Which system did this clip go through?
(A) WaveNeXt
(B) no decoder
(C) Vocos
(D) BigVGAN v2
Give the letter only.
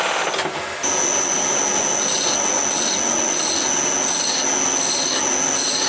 B